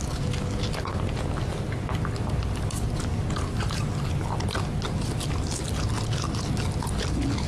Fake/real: real